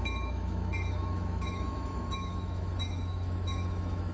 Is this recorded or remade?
remade